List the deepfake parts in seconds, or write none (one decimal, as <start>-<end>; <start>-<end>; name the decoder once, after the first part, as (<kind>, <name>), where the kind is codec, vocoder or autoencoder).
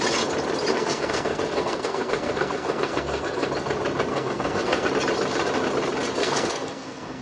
0.7-3.5 (codec, SNAC); 4.1-4.9; 6.2-7.2